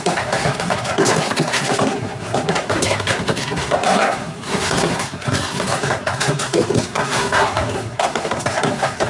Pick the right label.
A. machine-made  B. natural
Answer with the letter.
A